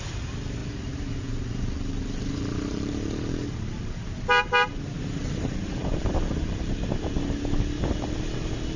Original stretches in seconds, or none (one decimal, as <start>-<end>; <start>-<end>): 0.0-0.6; 4.0-5.2; 6.7-8.8